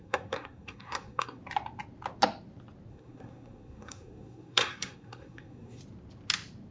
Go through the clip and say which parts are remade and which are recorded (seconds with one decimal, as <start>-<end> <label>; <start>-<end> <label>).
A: 0.0-1.4 remade; 1.4-2.9 recorded; 2.9-5.8 remade; 5.8-6.7 recorded